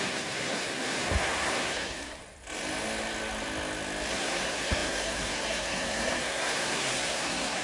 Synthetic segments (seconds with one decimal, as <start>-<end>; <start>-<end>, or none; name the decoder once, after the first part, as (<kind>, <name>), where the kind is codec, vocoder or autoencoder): 0.0-2.2 (codec, SNAC); 4.1-7.6